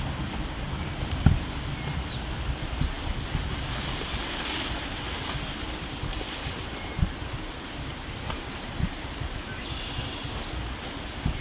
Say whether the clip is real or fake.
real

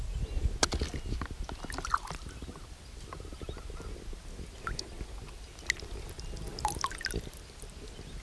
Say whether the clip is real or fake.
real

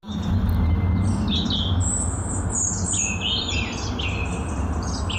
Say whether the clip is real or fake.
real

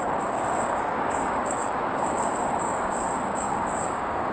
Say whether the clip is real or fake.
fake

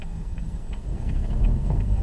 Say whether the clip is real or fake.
fake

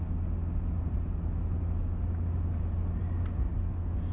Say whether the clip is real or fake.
real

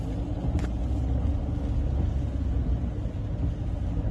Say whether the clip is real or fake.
real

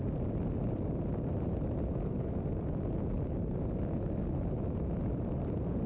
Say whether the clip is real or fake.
fake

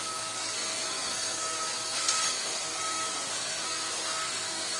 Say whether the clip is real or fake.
fake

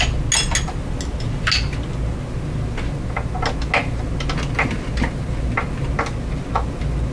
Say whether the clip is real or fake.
real